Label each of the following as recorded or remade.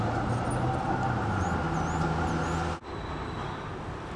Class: recorded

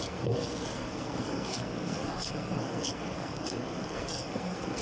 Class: remade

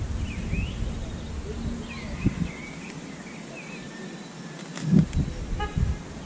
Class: recorded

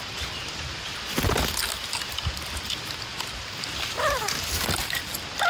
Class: recorded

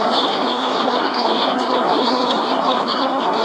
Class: remade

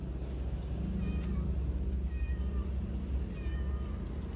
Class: recorded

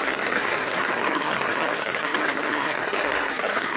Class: remade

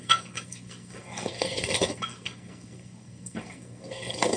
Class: remade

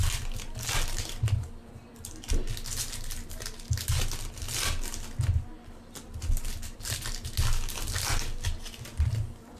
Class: recorded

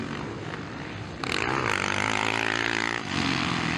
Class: recorded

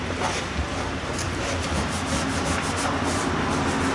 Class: recorded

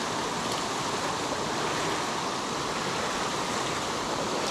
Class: recorded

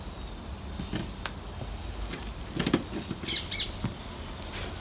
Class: recorded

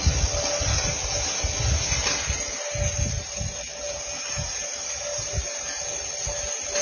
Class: recorded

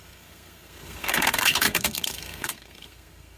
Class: remade